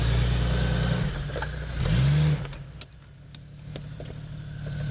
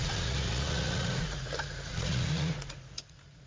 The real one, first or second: first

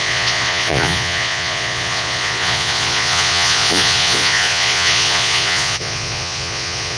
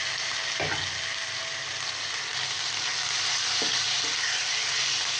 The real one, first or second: second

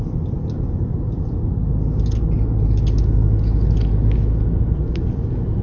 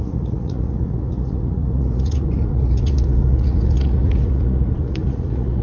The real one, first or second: first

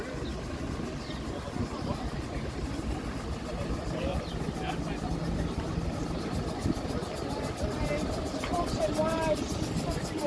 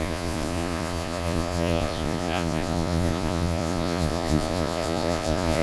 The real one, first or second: first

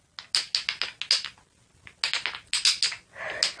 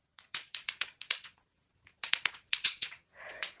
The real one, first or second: first